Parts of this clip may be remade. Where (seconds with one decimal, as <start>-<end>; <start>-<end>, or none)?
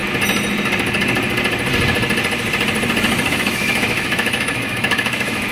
3.3-5.5